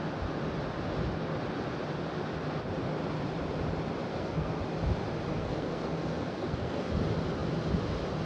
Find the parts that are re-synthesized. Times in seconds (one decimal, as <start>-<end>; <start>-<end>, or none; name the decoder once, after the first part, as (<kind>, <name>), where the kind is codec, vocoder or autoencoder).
4.1-4.6 (codec, SNAC); 5.3-6.9